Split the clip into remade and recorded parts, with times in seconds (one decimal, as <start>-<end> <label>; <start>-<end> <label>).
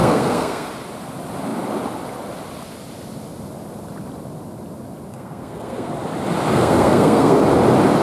0.0-0.7 remade; 0.7-5.1 recorded; 5.1-5.9 remade; 5.9-6.5 recorded; 6.5-7.4 remade; 7.4-8.0 recorded